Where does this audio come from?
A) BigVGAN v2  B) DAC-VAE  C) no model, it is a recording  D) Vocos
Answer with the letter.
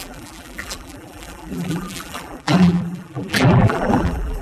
A